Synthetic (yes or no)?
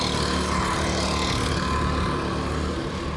no